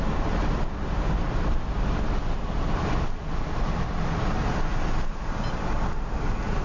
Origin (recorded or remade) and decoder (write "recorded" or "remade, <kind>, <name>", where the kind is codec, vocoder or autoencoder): recorded